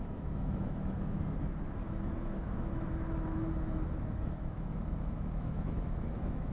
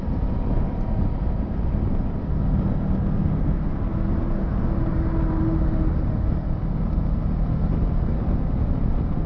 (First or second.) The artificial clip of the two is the first